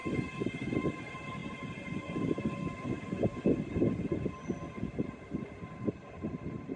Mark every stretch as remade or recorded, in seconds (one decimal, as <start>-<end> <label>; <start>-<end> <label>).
0.0-6.8 recorded